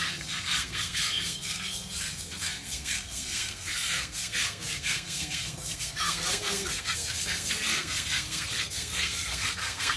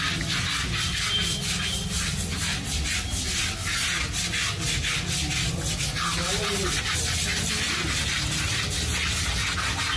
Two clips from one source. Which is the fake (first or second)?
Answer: first